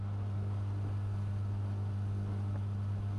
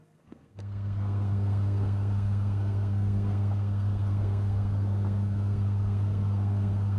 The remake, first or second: second